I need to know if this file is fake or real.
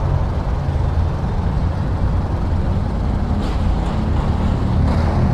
real